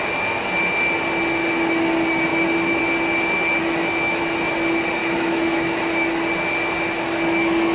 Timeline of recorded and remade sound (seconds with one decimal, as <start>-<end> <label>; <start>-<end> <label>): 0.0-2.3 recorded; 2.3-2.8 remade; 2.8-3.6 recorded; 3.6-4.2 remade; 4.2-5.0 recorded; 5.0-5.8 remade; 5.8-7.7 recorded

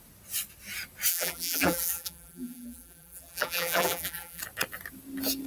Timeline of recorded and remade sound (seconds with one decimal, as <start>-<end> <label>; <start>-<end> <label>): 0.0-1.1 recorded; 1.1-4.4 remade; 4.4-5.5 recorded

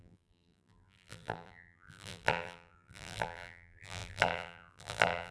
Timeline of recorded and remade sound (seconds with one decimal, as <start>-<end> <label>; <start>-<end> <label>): 0.0-5.3 remade

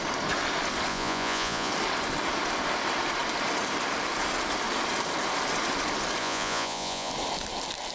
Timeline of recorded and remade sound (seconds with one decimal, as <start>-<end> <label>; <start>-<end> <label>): 0.0-0.9 recorded; 0.9-1.7 remade; 1.7-6.2 recorded; 6.2-7.1 remade; 7.1-7.9 recorded

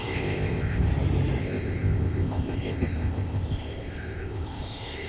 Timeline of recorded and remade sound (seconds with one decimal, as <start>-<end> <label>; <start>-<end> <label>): 0.0-0.9 remade; 0.9-1.4 recorded; 1.4-5.1 remade